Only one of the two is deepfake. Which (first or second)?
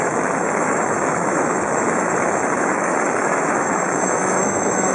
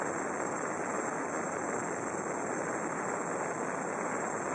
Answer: first